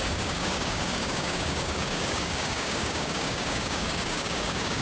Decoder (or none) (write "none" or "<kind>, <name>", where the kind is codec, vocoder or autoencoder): codec, DAC